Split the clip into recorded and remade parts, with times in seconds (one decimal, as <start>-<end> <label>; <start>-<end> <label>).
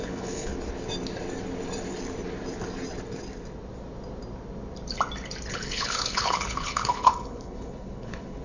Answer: 0.0-0.5 remade; 0.5-5.5 recorded; 5.5-8.4 remade